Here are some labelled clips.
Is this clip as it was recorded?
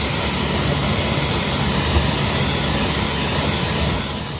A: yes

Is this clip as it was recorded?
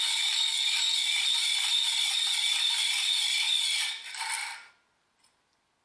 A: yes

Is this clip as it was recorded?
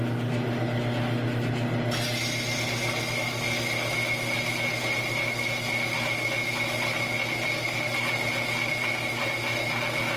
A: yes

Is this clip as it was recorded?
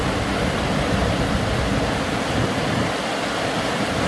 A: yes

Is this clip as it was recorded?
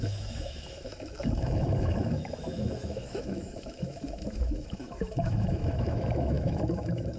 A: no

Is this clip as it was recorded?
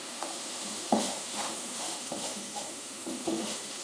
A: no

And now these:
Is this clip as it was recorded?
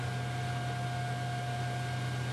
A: yes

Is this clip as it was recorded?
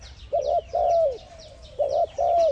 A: yes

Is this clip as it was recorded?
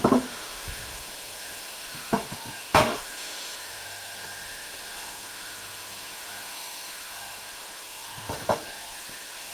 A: no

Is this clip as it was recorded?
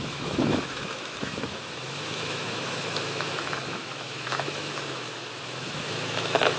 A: no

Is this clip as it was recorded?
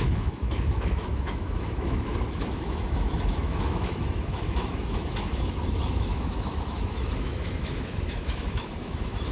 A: no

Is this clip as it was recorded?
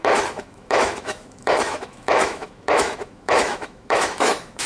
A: no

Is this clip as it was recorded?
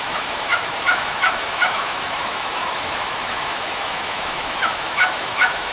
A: no